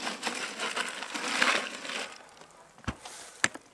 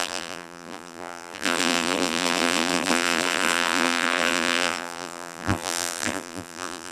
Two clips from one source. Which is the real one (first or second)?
first